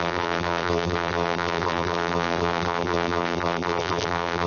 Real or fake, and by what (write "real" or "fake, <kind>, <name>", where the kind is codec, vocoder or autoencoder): fake, vocoder, BigVGAN v2